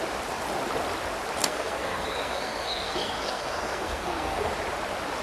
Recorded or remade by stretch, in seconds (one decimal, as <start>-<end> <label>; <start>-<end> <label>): 0.0-1.4 recorded; 1.4-4.5 remade; 4.5-5.2 recorded